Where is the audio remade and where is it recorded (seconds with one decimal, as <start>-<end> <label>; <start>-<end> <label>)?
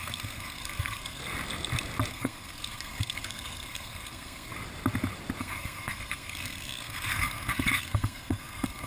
0.0-1.2 remade; 1.2-2.1 recorded; 2.1-4.5 remade; 4.5-5.4 recorded; 5.4-8.9 remade